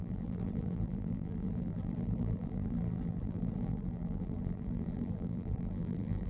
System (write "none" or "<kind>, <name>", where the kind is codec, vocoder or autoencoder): vocoder, BigVGAN v2